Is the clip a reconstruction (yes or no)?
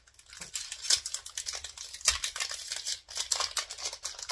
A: no